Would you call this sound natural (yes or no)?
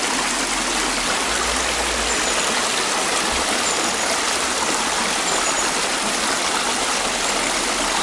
yes